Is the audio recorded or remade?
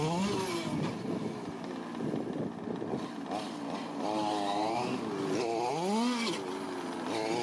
recorded